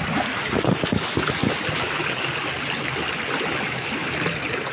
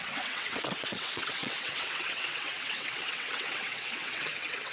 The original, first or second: first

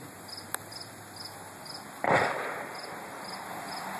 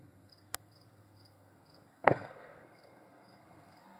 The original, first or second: first